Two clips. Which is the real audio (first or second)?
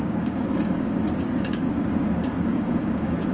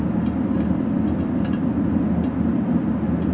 second